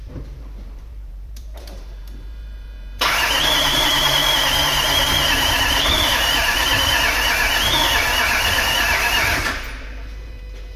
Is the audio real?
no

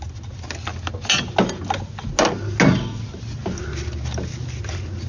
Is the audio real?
yes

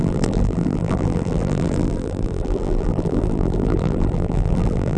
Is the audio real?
no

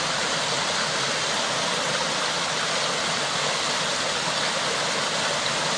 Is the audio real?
yes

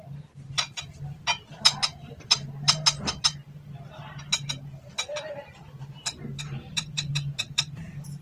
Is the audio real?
no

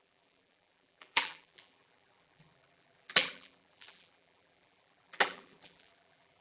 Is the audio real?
no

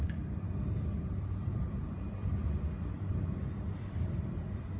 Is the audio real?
no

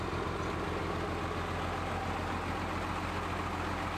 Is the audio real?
yes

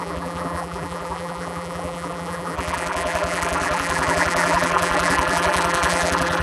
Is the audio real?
no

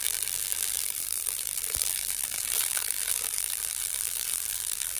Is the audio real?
no